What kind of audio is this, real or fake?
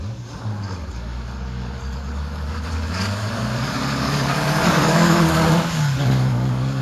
fake